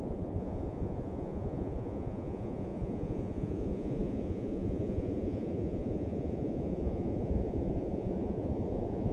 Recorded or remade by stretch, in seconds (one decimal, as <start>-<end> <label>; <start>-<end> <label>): 0.0-9.1 remade